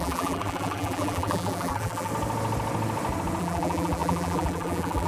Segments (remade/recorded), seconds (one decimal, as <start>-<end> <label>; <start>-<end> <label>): 0.0-2.1 remade; 2.1-3.4 recorded; 3.4-5.1 remade